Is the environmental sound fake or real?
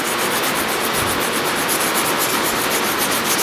real